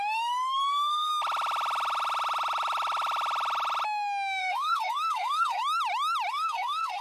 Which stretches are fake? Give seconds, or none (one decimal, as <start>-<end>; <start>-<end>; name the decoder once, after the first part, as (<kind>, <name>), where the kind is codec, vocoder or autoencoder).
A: 0.0-1.1 (codec, SNAC); 4.4-5.6; 6.3-7.0